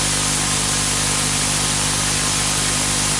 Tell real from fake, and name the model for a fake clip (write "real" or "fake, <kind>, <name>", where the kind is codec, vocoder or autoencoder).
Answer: real